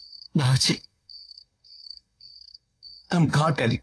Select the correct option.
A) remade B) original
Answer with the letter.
A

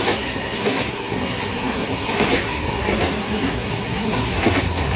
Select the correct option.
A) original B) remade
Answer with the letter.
B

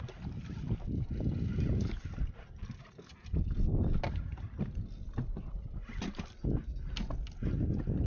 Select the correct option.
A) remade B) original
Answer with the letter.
B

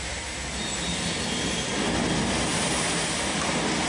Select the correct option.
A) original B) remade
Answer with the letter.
A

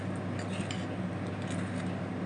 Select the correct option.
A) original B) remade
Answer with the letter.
A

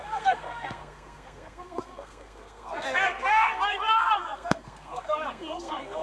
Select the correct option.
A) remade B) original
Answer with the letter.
A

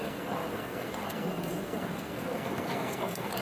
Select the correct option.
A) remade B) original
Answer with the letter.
A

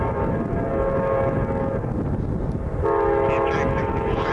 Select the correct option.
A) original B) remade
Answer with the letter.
A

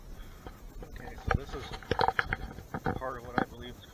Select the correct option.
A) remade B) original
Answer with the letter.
B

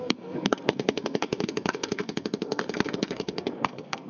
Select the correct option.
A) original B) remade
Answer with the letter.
B